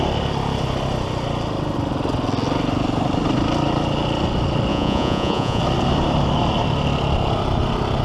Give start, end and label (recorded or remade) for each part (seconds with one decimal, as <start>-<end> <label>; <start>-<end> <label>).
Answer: 0.0-4.7 recorded; 4.7-5.6 remade; 5.6-8.0 recorded